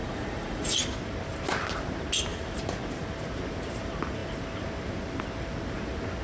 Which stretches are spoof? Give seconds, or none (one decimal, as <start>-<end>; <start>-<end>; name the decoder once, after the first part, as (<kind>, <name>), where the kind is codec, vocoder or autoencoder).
0.0-0.8 (vocoder, Vocos)